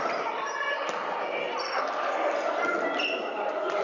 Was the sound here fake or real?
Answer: real